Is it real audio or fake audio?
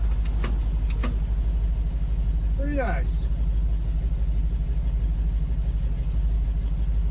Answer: real